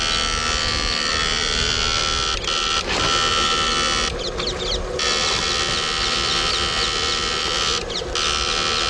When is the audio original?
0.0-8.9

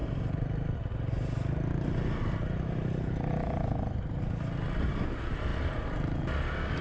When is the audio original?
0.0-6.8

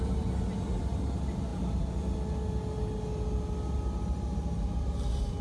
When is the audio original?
0.0-5.4